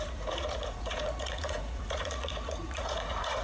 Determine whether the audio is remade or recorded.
remade